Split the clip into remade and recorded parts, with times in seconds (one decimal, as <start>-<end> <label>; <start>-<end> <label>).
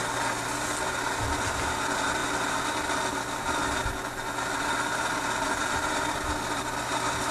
0.0-7.3 recorded